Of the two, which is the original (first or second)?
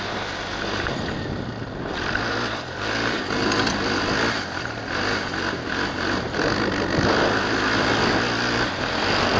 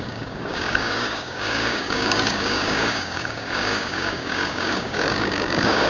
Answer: first